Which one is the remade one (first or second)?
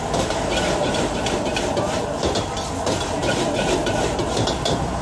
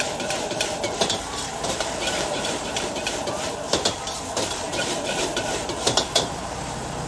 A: second